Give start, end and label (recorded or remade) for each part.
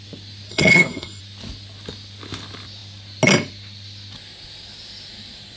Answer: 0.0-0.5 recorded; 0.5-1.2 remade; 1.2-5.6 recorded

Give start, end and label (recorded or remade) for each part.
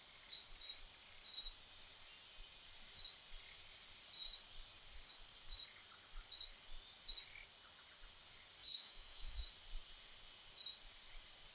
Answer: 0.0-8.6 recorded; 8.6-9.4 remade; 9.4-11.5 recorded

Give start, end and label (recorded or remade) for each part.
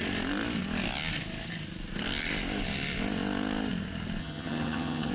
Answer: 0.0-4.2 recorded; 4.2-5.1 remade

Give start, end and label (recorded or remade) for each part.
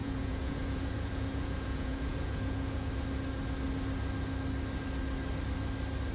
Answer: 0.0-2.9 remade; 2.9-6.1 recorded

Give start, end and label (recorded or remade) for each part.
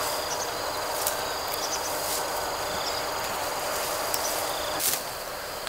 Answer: 0.0-5.7 recorded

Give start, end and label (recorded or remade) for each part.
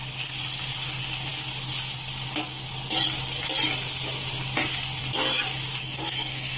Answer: 0.0-5.8 recorded; 5.8-6.6 remade